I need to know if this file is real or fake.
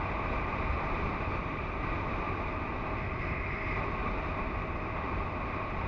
real